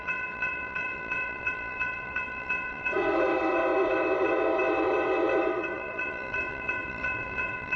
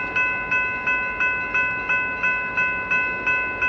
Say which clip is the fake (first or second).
first